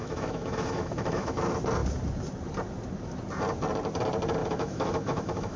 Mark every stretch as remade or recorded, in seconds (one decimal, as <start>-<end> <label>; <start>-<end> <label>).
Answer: 0.0-1.4 remade; 1.4-4.4 recorded; 4.4-5.6 remade